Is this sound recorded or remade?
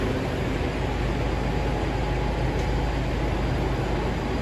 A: recorded